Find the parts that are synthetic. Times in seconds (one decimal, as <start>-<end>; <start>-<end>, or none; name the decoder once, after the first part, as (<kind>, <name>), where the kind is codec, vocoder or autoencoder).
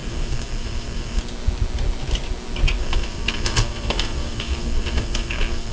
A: 0.0-1.2 (codec, SNAC); 2.8-5.7